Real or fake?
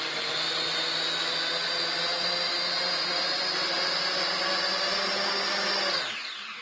real